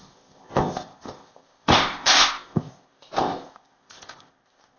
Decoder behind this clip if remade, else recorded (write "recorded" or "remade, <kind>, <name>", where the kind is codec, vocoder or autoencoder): remade, codec, ZipCodec